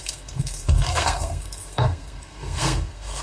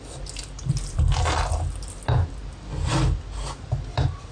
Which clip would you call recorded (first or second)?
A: second